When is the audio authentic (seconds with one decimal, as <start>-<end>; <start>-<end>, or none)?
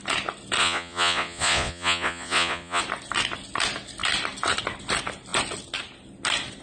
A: 0.0-0.6; 2.8-6.6